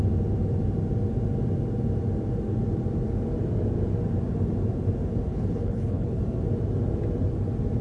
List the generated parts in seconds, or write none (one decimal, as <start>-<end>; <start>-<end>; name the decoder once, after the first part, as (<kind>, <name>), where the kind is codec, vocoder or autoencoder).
5.3-6.2 (codec, HILCodec)